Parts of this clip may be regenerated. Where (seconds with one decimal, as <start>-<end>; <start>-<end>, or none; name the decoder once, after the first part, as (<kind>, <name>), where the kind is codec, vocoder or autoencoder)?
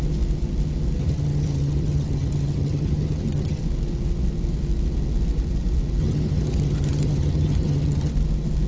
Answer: 1.0-3.6 (vocoder, HiFi-GAN); 6.0-8.1